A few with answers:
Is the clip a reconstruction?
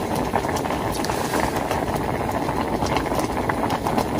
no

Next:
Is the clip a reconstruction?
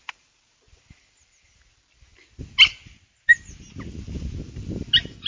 no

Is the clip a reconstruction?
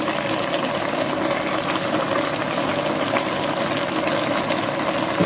no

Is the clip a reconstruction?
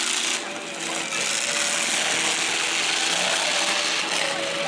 no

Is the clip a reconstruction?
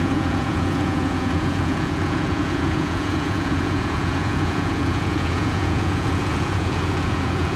yes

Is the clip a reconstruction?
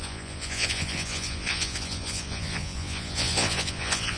yes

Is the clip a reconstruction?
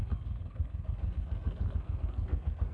yes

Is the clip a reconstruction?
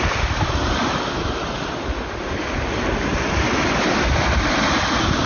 no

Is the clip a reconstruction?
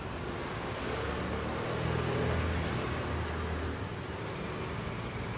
no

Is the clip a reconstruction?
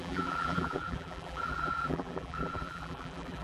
yes